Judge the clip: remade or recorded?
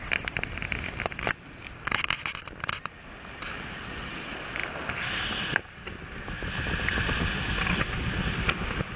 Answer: recorded